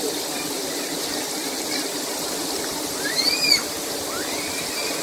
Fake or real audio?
fake